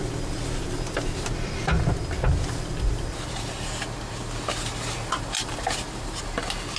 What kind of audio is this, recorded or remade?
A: recorded